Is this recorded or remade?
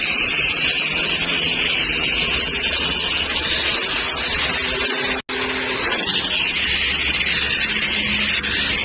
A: recorded